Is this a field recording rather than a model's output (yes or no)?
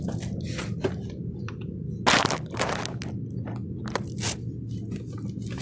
yes